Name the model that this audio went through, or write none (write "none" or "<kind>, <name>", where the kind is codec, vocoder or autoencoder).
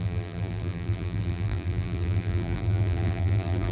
vocoder, BigVGAN v2